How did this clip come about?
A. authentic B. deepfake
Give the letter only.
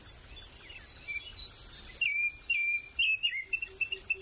A